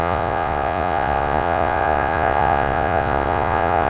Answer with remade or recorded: remade